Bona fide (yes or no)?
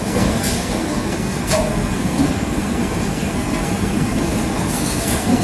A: no